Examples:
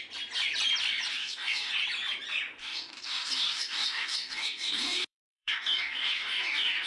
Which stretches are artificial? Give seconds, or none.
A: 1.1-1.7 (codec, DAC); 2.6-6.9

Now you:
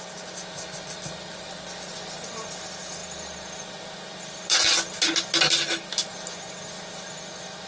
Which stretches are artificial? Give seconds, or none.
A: none

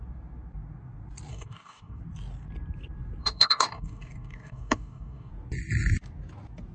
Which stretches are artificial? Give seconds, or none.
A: 1.3-2.0 (codec, DAC); 3.2-5.3